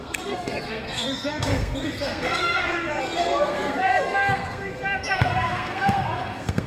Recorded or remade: remade